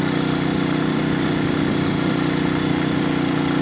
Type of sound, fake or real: real